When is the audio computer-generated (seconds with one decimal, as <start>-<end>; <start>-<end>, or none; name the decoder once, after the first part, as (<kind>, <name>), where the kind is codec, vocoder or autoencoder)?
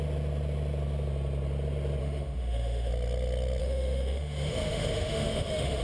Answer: 2.0-2.9 (autoencoder, DAC-VAE); 3.6-5.8